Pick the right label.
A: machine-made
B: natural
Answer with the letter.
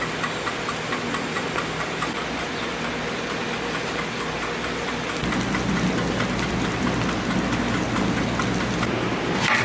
B